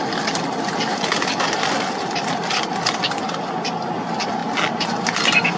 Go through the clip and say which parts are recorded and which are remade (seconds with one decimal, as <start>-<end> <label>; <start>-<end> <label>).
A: 0.0-5.6 recorded